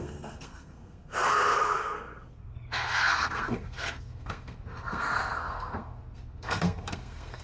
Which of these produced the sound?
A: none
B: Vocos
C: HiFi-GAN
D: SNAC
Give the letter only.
D